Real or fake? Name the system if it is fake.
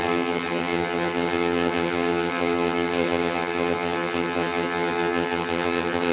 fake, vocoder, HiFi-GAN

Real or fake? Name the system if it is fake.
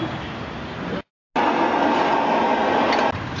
real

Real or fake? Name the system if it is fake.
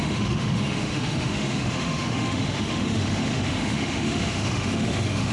fake, autoencoder, DAC-VAE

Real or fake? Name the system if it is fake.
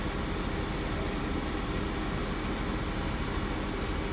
real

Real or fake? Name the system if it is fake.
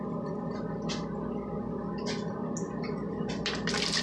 real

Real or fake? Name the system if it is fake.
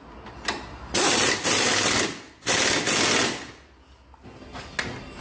real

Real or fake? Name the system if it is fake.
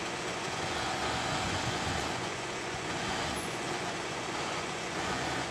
fake, vocoder, Vocos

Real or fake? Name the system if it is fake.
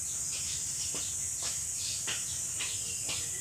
real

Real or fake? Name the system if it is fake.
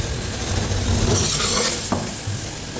real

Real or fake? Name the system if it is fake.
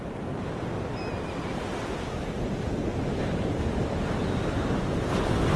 real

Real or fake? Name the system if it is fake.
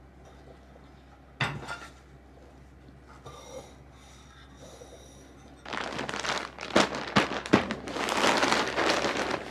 real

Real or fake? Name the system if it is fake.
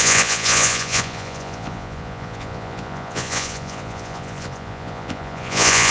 fake, vocoder, Vocos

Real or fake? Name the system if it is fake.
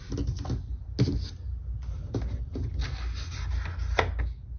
real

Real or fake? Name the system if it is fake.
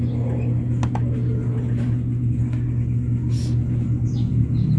real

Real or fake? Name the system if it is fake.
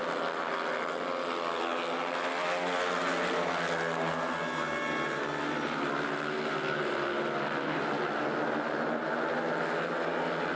real